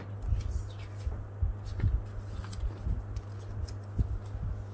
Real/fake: real